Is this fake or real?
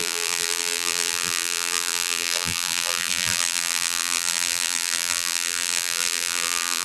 fake